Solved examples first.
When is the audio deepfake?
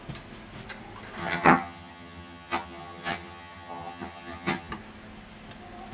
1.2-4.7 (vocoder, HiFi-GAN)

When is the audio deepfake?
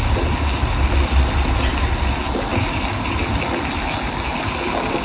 none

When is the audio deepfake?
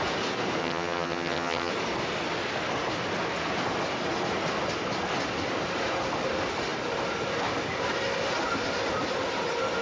0.6-1.7 (vocoder, HiFi-GAN)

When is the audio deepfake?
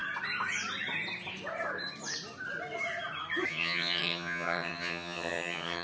3.5-5.8 (vocoder, HiFi-GAN)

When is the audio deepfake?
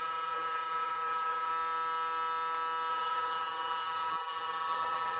0.0-1.5 (vocoder, HiFi-GAN); 2.9-5.2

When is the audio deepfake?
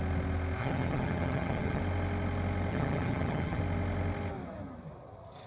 0.6-1.8 (vocoder, HiFi-GAN); 2.7-3.6